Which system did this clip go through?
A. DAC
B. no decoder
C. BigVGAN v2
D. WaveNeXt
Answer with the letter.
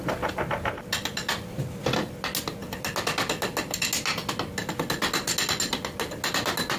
B